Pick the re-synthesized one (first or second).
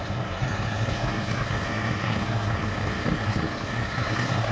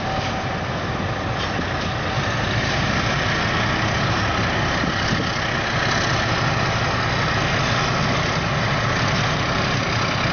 first